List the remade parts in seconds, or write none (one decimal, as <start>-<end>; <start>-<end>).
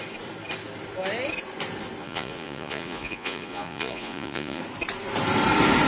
2.0-4.6